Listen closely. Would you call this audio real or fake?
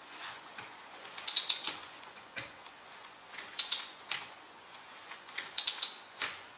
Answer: fake